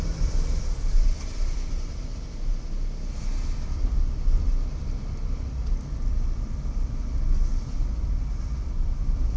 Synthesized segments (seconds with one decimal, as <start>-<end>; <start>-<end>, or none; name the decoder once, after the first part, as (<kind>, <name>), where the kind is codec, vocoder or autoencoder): 0.0-2.1 (vocoder, BigVGAN v2); 3.2-4.5; 5.9-9.4